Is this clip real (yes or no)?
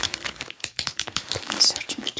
no